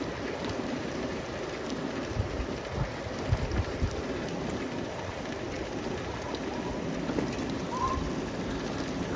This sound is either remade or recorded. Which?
recorded